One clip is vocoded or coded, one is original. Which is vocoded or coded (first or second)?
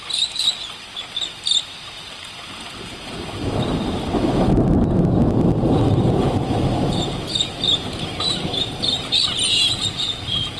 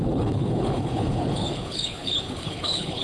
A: second